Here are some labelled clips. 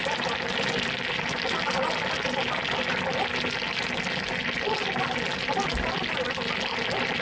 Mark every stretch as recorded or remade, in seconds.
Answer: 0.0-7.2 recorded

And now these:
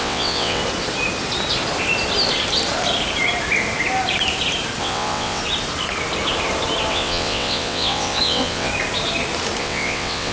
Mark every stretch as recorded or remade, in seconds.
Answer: 0.0-0.6 remade; 0.6-4.8 recorded; 4.8-5.4 remade; 5.4-6.9 recorded; 6.9-8.7 remade; 8.7-9.6 recorded; 9.6-10.3 remade

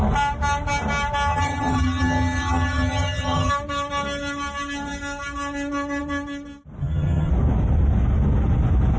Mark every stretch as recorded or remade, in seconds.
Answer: 0.0-1.3 recorded; 1.3-3.5 remade; 3.5-6.8 recorded; 6.8-7.3 remade; 7.3-9.0 recorded

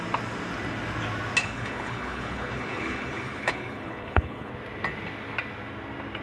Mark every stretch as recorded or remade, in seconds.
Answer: 0.0-1.4 recorded; 1.4-4.5 remade; 4.5-6.2 recorded

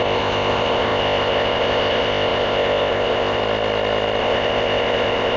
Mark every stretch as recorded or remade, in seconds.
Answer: 0.0-3.4 remade; 3.4-4.2 recorded; 4.2-5.4 remade

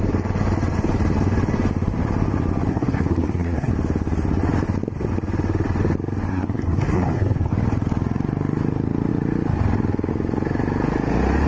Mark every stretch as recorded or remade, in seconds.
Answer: 0.0-2.7 recorded; 2.7-3.7 remade; 3.7-6.3 recorded; 6.3-7.5 remade; 7.5-11.5 recorded

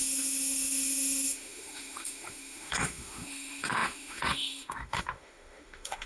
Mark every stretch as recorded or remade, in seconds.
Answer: 0.0-6.1 remade

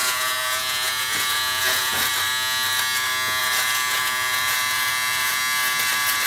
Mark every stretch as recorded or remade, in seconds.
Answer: 0.0-2.1 remade; 2.1-3.4 recorded; 3.4-5.4 remade; 5.4-6.3 recorded